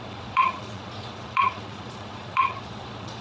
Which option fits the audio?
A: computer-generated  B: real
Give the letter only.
A